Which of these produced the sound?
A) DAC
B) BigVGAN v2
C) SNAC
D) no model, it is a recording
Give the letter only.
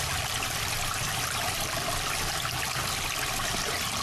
D